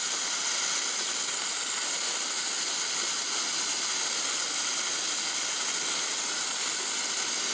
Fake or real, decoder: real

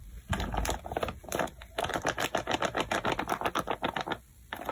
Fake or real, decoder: real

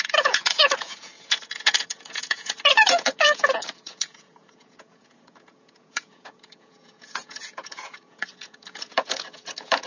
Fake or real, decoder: fake, vocoder, Vocos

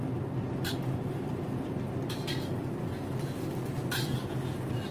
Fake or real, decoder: real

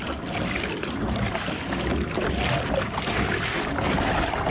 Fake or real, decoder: real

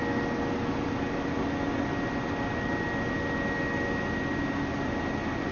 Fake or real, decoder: real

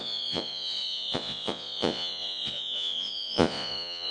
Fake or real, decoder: fake, vocoder, Vocos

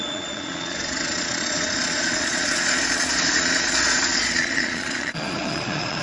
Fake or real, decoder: fake, vocoder, Vocos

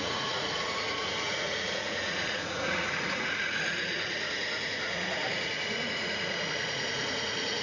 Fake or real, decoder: fake, vocoder, Vocos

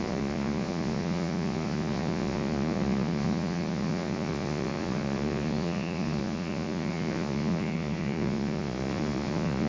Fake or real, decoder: fake, vocoder, Vocos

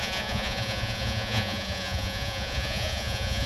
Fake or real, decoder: fake, vocoder, Vocos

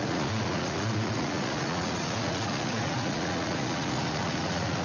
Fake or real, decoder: fake, vocoder, Vocos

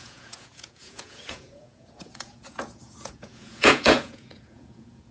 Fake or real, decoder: fake, vocoder, Vocos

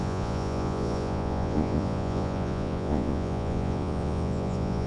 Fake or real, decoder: fake, vocoder, Vocos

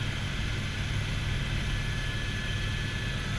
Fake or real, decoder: real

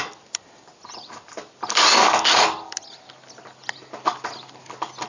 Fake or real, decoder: real